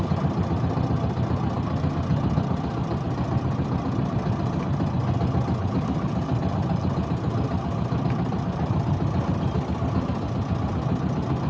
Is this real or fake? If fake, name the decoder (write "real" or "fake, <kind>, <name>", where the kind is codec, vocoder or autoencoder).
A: real